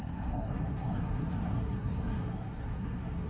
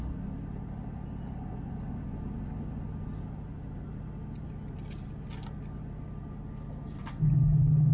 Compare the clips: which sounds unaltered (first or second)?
second